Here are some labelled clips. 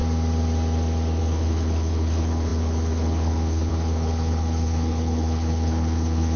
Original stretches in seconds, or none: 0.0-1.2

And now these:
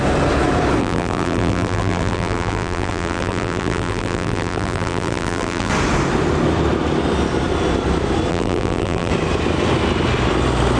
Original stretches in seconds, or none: 0.0-0.8; 5.7-8.3; 9.1-10.8

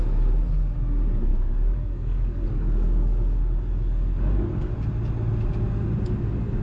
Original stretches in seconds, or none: 0.0-1.3; 4.7-6.6